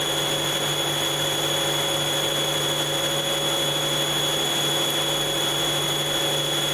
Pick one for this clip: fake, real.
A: real